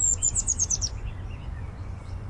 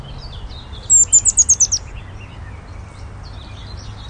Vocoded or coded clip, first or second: first